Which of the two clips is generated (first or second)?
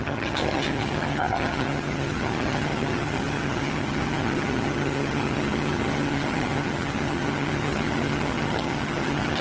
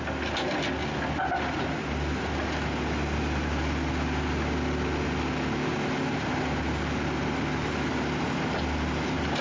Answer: first